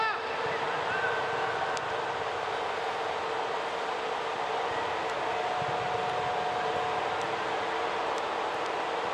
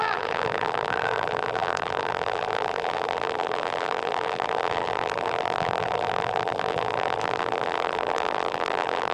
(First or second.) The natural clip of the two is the first